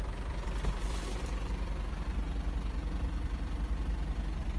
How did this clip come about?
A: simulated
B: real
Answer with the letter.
A